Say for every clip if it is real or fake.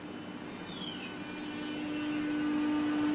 real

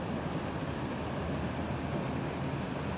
real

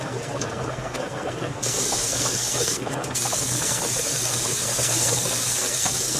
fake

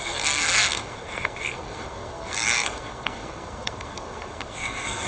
fake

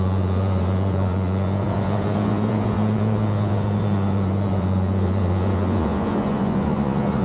fake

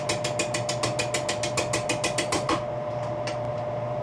real